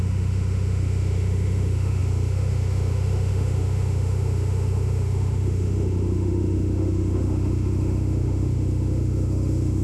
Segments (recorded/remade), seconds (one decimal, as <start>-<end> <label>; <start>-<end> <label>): 0.0-9.8 remade